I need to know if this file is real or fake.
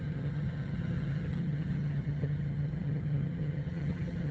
fake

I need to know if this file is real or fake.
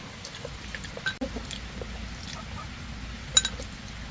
real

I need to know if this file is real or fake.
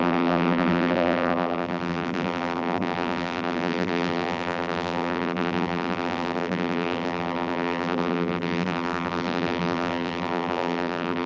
fake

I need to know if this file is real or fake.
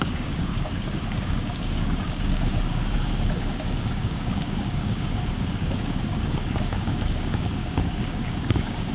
fake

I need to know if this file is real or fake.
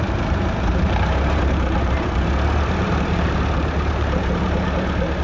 fake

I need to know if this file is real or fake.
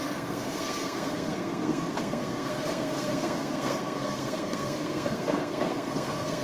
fake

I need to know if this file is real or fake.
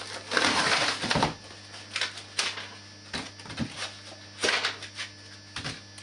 real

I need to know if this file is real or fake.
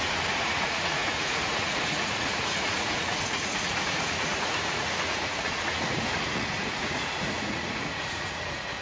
fake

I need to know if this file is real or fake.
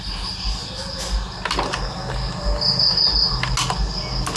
real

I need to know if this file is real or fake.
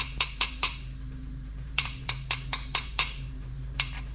fake